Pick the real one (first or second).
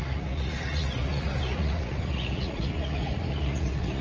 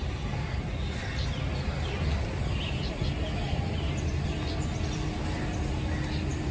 second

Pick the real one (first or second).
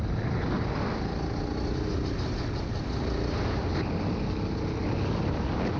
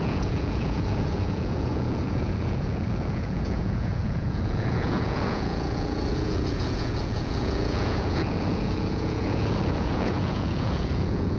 first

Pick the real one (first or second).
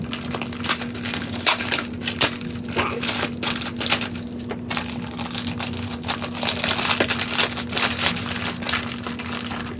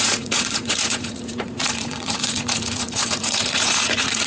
first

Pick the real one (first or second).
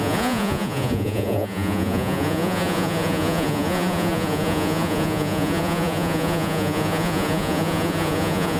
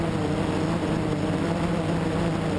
second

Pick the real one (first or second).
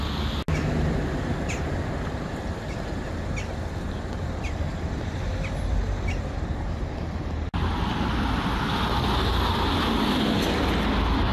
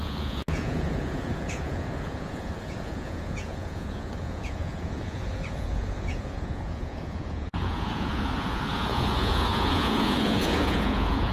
first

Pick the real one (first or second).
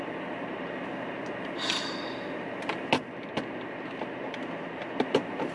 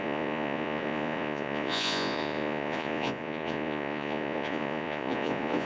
first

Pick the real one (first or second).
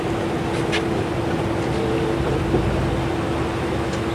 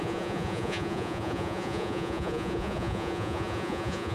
first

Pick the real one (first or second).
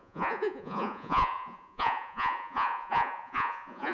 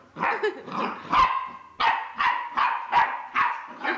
second